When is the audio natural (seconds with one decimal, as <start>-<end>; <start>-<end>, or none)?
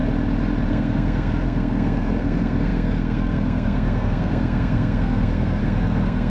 0.0-0.7